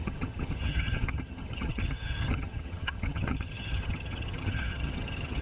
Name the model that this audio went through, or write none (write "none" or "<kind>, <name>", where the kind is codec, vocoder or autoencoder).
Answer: vocoder, HiFi-GAN